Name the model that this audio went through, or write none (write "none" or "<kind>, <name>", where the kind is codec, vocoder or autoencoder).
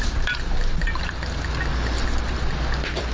none